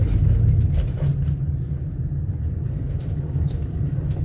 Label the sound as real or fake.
real